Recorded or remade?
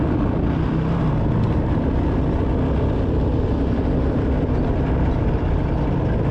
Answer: recorded